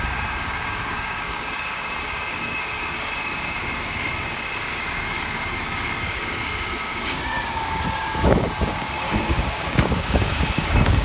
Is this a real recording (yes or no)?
no